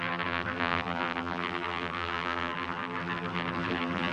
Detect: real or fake fake